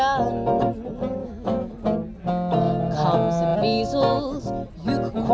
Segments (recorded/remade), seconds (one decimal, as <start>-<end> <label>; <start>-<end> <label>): 0.0-1.2 recorded; 1.2-1.7 remade; 1.7-5.3 recorded